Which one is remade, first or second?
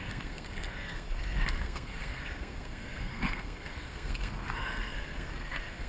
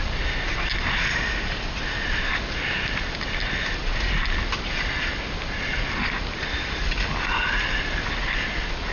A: first